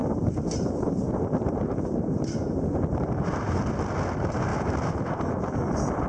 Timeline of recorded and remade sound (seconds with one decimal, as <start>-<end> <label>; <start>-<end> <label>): 0.0-3.7 remade; 3.7-4.5 recorded; 4.5-5.3 remade; 5.3-6.1 recorded

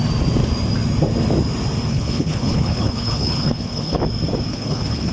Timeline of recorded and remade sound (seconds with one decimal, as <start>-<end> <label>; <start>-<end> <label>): 0.0-1.9 recorded; 1.9-4.0 remade; 4.0-4.5 recorded; 4.5-5.1 remade

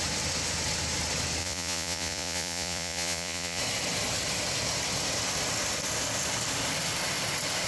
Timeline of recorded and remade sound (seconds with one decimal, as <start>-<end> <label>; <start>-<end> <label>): 0.0-1.4 recorded; 1.4-3.6 remade; 3.6-7.7 recorded